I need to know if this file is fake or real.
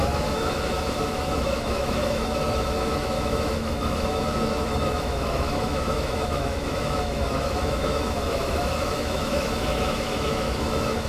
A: fake